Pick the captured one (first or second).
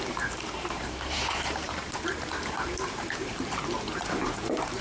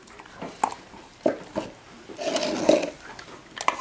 second